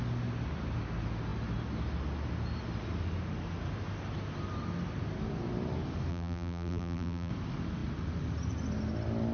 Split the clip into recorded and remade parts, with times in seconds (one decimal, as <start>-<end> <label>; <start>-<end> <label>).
0.0-6.1 recorded; 6.1-7.3 remade; 7.3-9.3 recorded